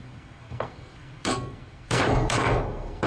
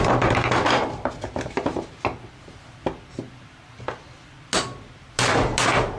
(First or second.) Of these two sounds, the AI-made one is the first